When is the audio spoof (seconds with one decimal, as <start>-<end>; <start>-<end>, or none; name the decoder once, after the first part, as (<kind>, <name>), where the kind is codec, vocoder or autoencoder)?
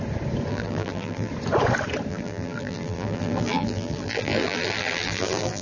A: 0.5-1.3 (vocoder, BigVGAN v2); 2.1-5.6